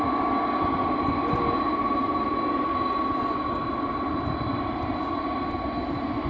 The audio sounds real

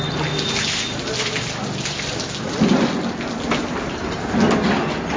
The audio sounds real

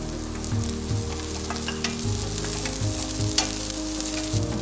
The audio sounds real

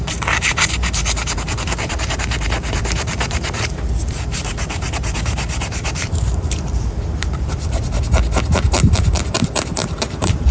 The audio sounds fake